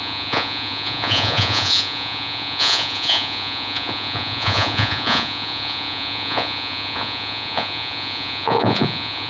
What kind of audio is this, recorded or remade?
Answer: remade